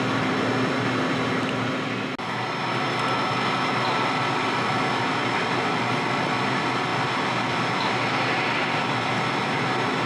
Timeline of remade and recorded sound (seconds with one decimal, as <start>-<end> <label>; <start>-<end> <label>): 0.0-10.1 recorded